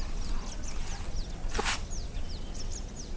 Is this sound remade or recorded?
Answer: recorded